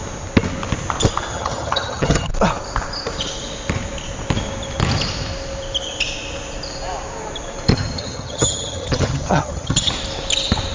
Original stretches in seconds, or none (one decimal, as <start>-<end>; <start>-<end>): 0.0-1.3; 2.3-7.7; 9.9-10.7